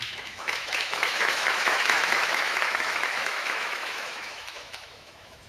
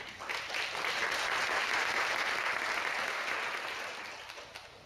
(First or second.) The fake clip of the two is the first